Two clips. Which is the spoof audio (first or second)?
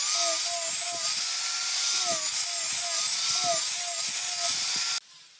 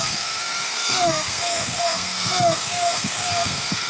second